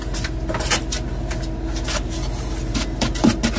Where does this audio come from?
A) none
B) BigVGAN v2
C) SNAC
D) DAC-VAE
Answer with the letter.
A